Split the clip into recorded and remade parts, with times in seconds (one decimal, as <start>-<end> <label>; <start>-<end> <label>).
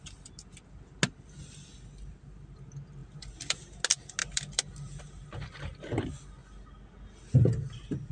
0.0-3.0 recorded; 3.0-3.6 remade; 3.6-4.2 recorded; 4.2-5.0 remade; 5.0-8.1 recorded